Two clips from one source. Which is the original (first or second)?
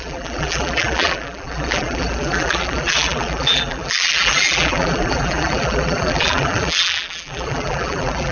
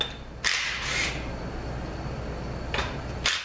second